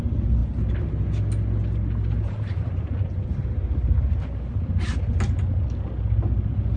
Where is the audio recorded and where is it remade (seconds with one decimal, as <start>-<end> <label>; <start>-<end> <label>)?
0.0-6.8 recorded